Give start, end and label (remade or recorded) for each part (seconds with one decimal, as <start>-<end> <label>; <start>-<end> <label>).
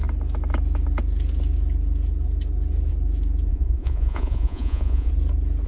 0.0-3.5 recorded; 3.5-5.1 remade; 5.1-5.7 recorded